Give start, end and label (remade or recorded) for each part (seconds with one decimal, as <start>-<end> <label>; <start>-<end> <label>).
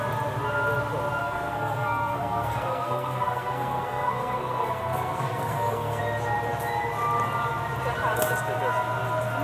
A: 0.0-1.2 recorded; 1.2-6.0 remade; 6.0-9.4 recorded